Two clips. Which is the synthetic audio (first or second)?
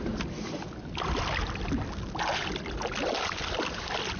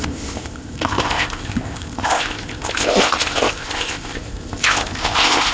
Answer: second